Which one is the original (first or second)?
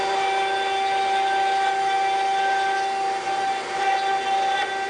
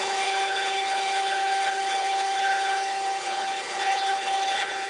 first